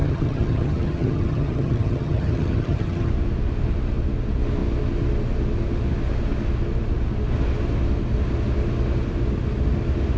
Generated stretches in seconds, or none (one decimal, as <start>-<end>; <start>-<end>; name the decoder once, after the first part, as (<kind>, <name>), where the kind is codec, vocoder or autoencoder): 0.0-3.1 (vocoder, HiFi-GAN)